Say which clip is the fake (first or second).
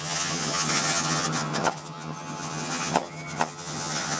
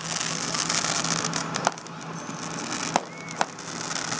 first